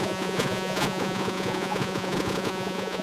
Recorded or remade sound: remade